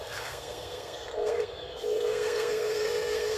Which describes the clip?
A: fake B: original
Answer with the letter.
A